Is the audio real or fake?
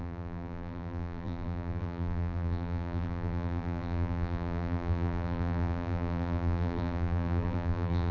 fake